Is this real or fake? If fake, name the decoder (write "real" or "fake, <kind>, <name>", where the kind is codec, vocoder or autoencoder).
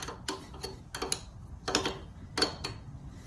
real